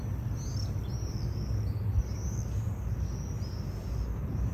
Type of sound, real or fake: real